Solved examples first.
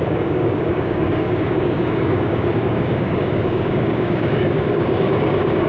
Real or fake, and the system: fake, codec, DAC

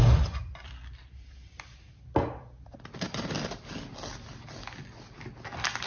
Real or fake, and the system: real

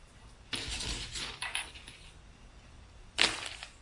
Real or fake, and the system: real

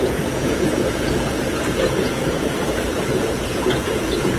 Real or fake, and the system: fake, vocoder, Vocos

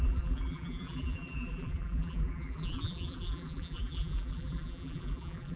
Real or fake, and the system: fake, vocoder, BigVGAN v2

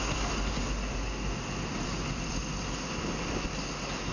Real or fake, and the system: real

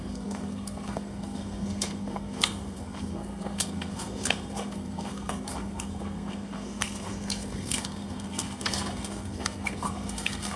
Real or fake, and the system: fake, codec, SNAC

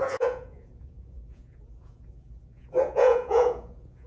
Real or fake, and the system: fake, vocoder, Vocos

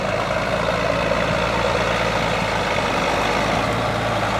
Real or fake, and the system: real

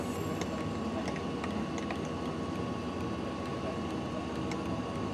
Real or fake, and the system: real